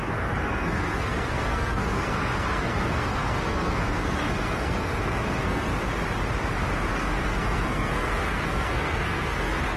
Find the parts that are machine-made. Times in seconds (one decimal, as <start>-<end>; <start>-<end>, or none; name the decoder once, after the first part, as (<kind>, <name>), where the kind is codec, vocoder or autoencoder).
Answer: 0.0-5.7 (codec, SNAC); 6.9-9.8